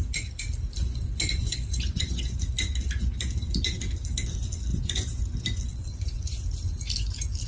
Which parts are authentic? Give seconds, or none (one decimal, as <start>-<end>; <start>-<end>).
0.0-0.8; 2.4-4.7; 5.2-5.7; 6.4-7.5